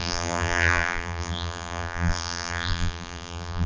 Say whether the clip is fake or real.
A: fake